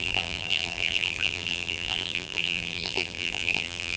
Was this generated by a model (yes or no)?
yes